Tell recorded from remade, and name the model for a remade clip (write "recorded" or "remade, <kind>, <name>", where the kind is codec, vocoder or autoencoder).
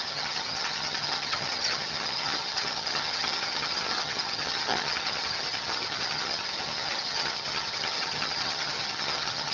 remade, vocoder, HiFi-GAN